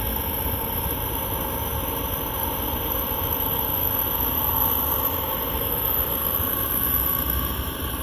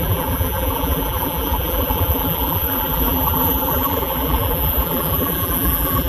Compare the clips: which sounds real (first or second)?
first